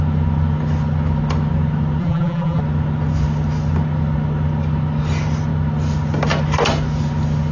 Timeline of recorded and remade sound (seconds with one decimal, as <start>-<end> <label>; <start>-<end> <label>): 0.0-2.0 recorded; 2.0-2.6 remade; 2.6-7.5 recorded